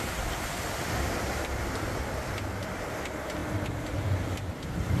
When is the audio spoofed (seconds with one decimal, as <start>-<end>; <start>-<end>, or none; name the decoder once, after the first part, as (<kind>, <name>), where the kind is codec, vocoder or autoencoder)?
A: none